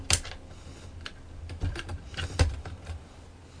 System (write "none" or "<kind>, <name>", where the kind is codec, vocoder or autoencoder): none